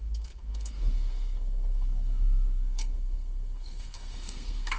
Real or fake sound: fake